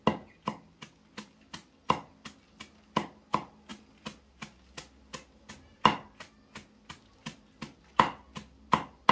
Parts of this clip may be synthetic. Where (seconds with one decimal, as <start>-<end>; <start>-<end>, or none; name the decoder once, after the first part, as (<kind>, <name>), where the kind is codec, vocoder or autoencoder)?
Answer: none